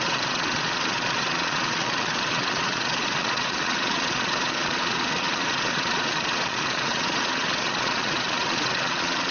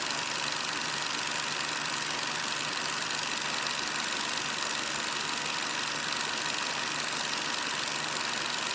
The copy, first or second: first